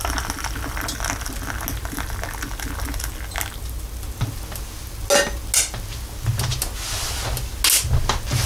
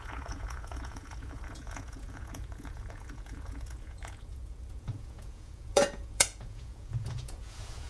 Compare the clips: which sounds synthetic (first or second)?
second